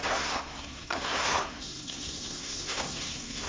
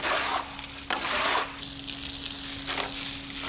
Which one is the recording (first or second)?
second